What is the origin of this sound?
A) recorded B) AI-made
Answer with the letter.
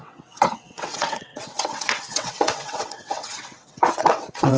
B